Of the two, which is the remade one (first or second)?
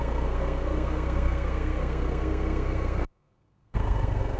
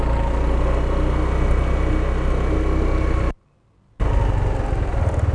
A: first